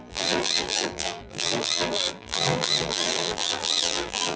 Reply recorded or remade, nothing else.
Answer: remade